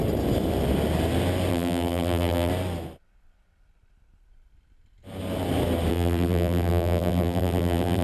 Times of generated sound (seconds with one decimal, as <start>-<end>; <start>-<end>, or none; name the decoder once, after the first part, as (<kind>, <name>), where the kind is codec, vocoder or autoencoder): 1.5-2.5 (vocoder, BigVGAN v2); 5.9-8.0